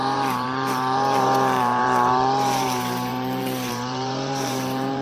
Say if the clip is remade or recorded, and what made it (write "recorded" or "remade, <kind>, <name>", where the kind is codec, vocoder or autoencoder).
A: remade, vocoder, BigVGAN v2